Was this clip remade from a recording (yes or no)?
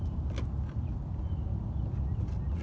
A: no